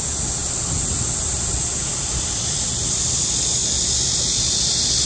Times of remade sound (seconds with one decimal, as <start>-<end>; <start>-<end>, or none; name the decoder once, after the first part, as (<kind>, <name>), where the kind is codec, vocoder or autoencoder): 0.0-3.6 (vocoder, BigVGAN v2); 4.4-5.1